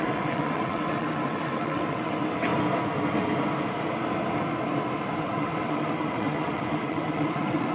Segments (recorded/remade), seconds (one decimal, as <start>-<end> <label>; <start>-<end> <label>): 0.0-2.5 remade; 2.5-5.2 recorded; 5.2-7.7 remade